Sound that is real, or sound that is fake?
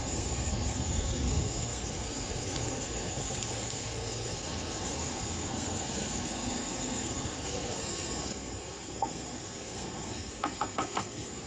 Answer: fake